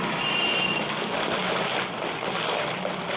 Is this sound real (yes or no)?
no